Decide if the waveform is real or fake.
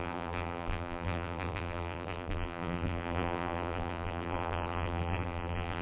fake